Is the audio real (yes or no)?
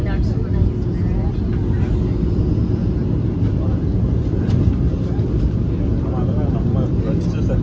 yes